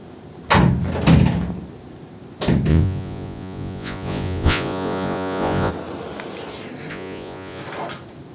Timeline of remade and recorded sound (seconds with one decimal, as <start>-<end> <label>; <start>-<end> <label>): 0.0-2.7 recorded; 2.7-5.7 remade; 5.7-6.9 recorded; 6.9-7.6 remade; 7.6-8.3 recorded